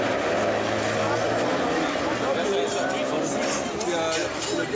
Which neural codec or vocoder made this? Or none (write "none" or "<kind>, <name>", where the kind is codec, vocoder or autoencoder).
none